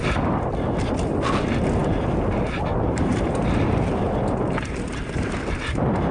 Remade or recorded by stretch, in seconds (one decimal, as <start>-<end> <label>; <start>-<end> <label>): 0.0-6.1 recorded